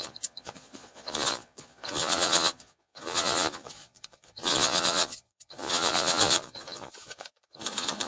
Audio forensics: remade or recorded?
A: remade